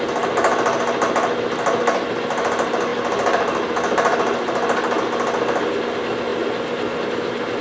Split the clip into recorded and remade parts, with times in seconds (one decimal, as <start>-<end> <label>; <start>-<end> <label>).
0.0-7.6 recorded